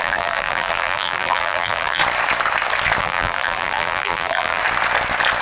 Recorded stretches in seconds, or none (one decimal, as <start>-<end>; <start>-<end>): 2.0-3.0; 4.6-5.4